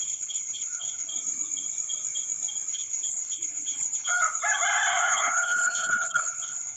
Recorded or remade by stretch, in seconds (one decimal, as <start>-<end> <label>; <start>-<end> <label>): 0.0-1.1 remade; 1.1-2.7 recorded; 2.7-4.1 remade; 4.1-5.0 recorded; 5.0-6.8 remade